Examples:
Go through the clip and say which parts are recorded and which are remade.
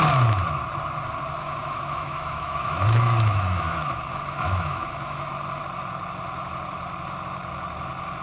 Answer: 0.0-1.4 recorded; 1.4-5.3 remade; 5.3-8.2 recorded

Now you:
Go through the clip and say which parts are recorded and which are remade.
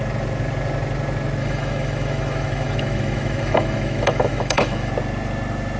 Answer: 0.0-1.4 recorded; 1.4-4.9 remade; 4.9-5.8 recorded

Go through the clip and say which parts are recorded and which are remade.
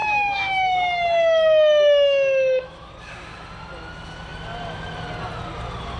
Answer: 0.0-2.9 remade; 2.9-6.0 recorded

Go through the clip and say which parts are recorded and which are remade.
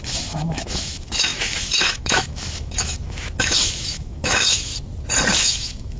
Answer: 0.0-4.7 remade; 4.7-5.4 recorded; 5.4-6.0 remade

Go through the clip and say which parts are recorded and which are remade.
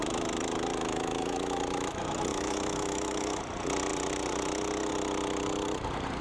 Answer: 0.0-0.7 recorded; 0.7-1.6 remade; 1.6-2.3 recorded; 2.3-3.4 remade; 3.4-6.2 recorded